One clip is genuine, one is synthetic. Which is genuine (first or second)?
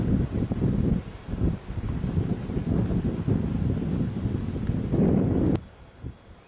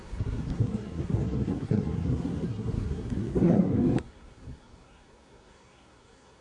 first